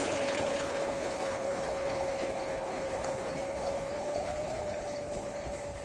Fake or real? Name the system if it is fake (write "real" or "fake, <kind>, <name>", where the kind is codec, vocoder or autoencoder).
fake, codec, HILCodec